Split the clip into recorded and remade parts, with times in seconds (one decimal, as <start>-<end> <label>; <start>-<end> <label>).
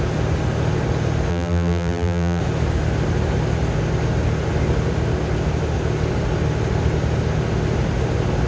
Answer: 0.0-1.3 recorded; 1.3-2.4 remade; 2.4-8.5 recorded